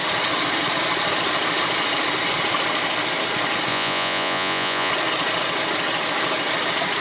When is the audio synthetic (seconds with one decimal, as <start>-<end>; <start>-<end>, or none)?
3.7-4.9